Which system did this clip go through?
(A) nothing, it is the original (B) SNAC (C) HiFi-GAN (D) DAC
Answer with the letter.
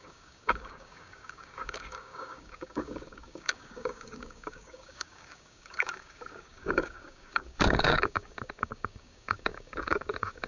D